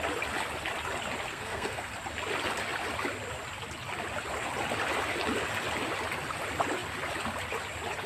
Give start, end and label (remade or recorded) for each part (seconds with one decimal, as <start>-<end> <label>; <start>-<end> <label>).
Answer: 0.0-1.3 recorded; 1.3-1.9 remade; 1.9-8.1 recorded